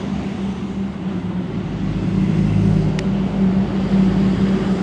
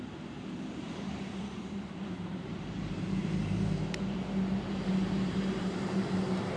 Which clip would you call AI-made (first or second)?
second